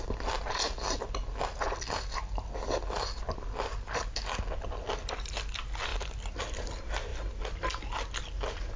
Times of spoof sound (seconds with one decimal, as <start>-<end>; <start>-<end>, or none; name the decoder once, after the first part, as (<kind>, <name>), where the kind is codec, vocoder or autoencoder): none